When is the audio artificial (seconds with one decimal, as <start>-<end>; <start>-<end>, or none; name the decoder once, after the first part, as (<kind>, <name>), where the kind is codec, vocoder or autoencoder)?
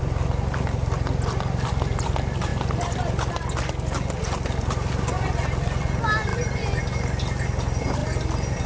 6.3-6.8 (vocoder, BigVGAN v2)